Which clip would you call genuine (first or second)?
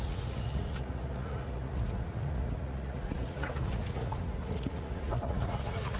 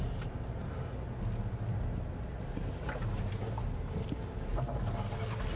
second